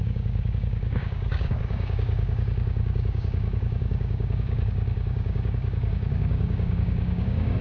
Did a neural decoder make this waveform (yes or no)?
yes